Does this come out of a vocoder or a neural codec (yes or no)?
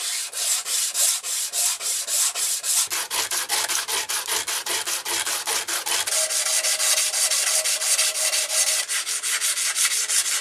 no